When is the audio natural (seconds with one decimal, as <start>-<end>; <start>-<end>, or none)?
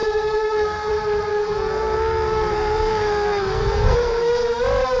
0.9-1.3; 4.3-5.0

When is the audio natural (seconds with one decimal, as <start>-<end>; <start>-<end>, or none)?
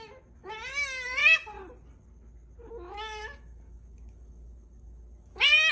1.2-2.7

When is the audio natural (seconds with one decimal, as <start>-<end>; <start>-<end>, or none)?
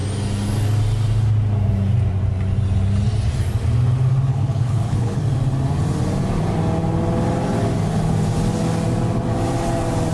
0.0-4.3; 5.2-10.1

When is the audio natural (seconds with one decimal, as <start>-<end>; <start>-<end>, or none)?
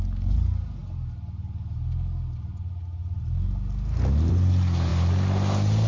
0.0-5.9